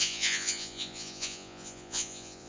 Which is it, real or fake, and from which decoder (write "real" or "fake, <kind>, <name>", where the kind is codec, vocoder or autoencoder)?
fake, vocoder, Vocos